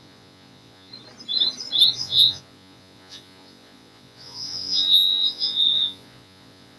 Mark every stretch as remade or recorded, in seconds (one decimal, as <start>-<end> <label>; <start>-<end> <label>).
0.0-0.9 remade; 0.9-2.0 recorded; 2.0-6.8 remade

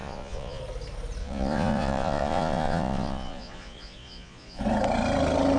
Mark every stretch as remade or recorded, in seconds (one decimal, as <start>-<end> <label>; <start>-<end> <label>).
0.0-0.6 remade; 0.6-1.2 recorded; 1.2-4.6 remade; 4.6-5.6 recorded

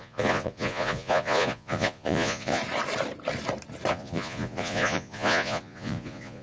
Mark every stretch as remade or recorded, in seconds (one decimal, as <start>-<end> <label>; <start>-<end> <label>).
0.0-2.6 remade; 2.6-3.9 recorded; 3.9-6.4 remade

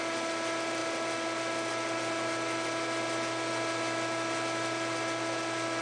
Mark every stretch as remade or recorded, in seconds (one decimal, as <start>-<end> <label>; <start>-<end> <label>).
0.0-5.8 recorded